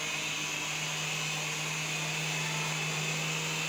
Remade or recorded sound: recorded